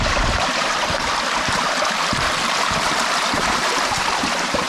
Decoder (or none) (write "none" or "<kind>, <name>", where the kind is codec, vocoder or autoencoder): vocoder, BigVGAN v2